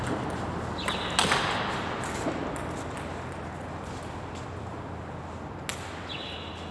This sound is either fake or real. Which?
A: real